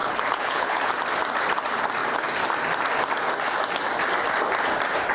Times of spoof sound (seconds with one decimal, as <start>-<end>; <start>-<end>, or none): 0.0-0.9